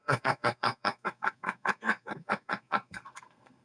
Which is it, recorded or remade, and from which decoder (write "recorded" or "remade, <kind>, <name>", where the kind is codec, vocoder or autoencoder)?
remade, codec, SNAC